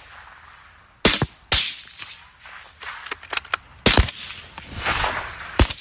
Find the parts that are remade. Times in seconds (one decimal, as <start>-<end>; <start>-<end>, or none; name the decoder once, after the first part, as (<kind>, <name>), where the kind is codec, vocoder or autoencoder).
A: none